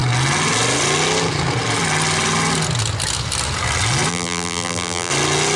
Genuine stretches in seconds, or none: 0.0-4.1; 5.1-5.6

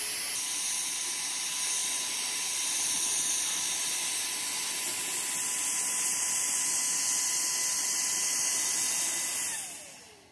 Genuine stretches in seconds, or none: 0.0-1.8; 3.5-10.3